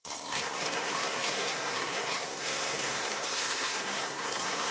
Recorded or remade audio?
remade